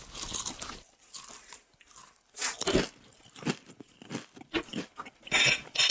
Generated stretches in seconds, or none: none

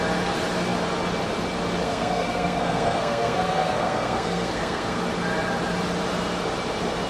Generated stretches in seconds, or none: 1.8-5.0 (codec, SNAC)

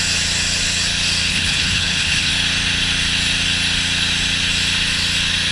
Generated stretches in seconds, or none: 1.3-2.3 (codec, HILCodec)